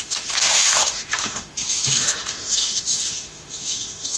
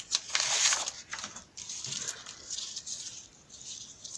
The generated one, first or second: first